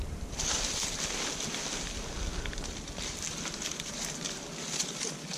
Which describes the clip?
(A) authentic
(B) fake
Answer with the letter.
A